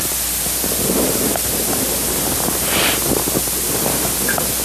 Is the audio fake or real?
real